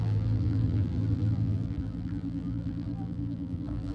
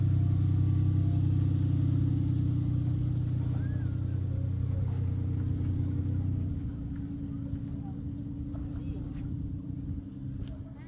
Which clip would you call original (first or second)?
second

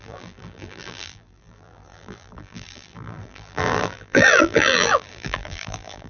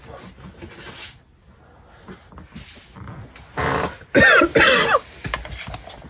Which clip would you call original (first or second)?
second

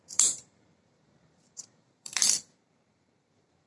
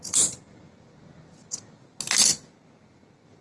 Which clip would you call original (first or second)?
second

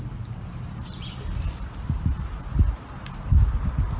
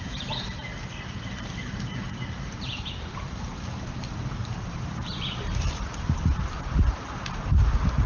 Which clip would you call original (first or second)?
first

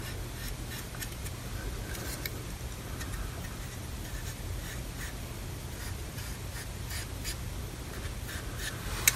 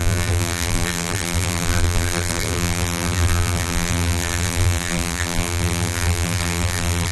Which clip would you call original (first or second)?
first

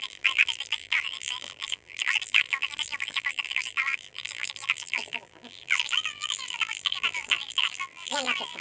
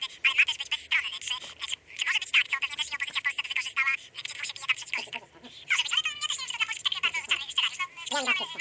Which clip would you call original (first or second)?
second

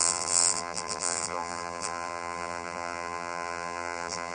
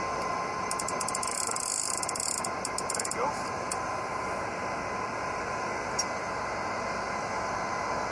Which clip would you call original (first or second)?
second